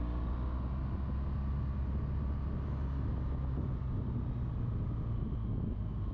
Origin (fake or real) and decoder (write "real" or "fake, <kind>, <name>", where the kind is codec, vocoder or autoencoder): real